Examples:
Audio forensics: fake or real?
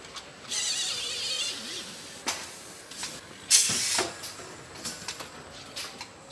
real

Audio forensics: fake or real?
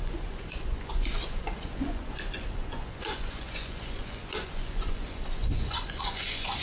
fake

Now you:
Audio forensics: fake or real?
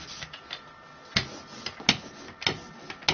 real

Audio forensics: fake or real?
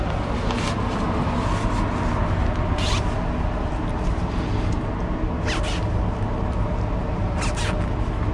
real